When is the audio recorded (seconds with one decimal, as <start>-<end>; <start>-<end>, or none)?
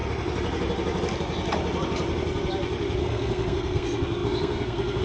0.0-3.0